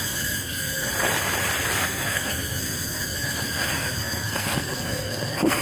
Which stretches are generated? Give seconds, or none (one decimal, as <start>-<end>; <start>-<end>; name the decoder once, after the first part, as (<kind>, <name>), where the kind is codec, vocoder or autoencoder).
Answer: 0.0-0.9 (codec, SNAC); 1.8-5.6